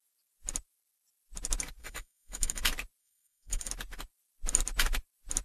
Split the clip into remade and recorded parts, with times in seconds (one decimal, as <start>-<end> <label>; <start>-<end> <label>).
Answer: 0.0-1.8 recorded; 1.8-2.6 remade; 2.6-3.0 recorded; 3.0-3.7 remade; 3.7-5.4 recorded